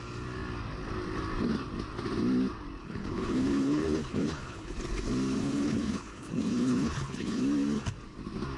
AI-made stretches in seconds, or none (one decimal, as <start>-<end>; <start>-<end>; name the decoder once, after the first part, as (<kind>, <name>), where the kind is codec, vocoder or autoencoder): 2.8-4.8 (codec, HILCodec); 5.4-7.4